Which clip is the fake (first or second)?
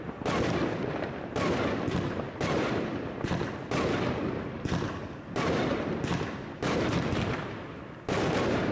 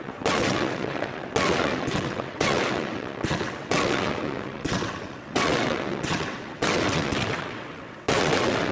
second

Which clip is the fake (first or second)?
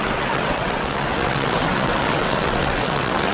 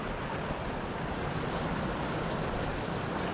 first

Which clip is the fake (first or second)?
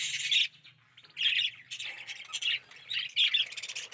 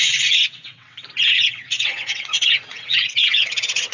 second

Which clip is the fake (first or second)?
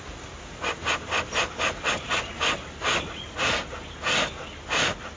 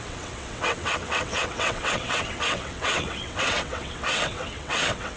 second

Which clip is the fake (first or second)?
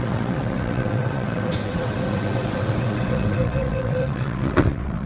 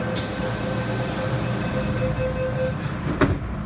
first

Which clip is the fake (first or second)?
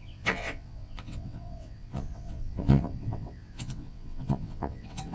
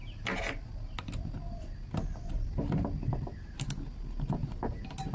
first